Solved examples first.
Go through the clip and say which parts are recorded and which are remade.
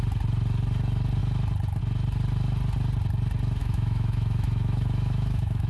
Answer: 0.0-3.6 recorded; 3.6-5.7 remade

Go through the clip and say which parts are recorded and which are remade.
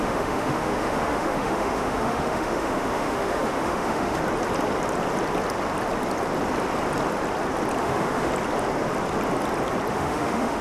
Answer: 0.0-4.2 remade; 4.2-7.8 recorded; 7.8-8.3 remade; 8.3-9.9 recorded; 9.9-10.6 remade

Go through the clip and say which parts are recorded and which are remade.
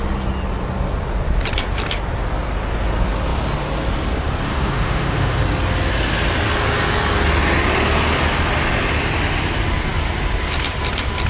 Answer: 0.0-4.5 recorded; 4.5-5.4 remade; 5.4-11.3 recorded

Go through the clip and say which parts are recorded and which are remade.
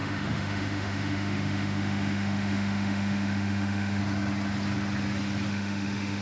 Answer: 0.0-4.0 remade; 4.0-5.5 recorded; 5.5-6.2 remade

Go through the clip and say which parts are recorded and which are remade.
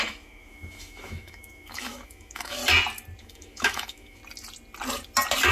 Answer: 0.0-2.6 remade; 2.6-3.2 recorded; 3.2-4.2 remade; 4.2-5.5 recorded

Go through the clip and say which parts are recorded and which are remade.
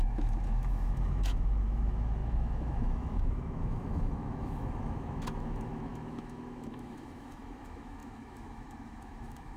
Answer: 0.0-9.6 remade